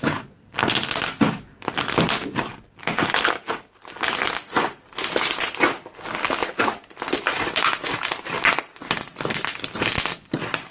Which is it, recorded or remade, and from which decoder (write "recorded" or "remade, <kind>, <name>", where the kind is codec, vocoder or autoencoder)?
recorded